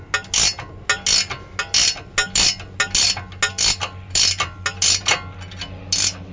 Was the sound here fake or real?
real